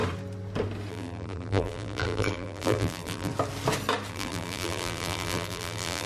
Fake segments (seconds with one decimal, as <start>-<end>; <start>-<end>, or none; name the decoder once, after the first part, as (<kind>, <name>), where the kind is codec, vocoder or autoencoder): 0.9-3.3 (vocoder, BigVGAN v2); 4.1-6.1